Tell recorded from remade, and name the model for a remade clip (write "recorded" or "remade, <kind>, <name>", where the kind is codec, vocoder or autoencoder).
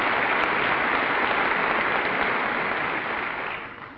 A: recorded